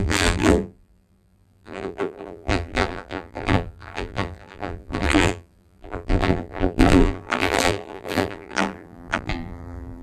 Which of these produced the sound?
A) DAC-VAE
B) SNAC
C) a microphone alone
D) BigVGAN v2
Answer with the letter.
D